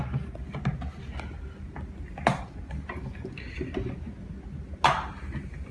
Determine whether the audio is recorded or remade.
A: recorded